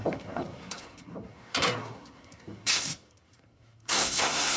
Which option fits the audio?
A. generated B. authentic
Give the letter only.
A